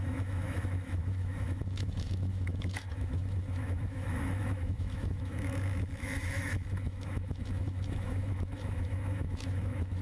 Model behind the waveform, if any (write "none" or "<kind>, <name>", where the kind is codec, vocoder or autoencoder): autoencoder, DAC-VAE